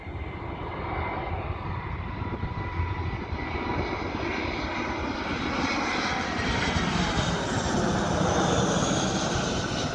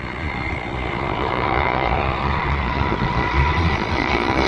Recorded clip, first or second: first